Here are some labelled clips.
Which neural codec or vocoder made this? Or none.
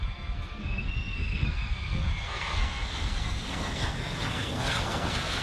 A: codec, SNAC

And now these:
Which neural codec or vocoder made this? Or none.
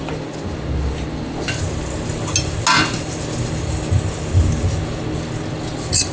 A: none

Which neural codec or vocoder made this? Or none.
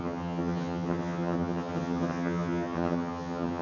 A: vocoder, HiFi-GAN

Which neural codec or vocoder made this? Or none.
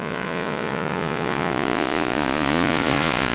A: vocoder, Vocos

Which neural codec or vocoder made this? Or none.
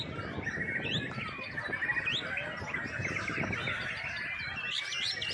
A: none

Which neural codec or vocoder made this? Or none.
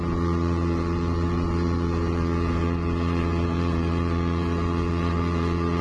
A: vocoder, Vocos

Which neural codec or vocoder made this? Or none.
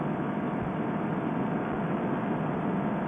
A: none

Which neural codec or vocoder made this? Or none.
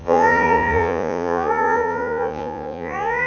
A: vocoder, Vocos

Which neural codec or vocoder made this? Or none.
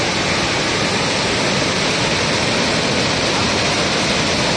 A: none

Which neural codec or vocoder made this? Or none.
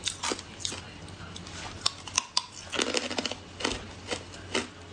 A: none